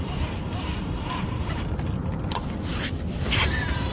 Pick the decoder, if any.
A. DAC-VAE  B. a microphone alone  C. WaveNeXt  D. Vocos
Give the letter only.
B